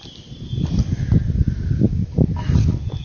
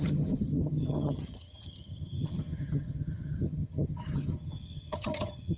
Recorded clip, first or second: first